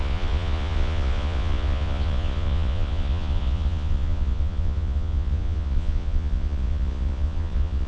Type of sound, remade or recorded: remade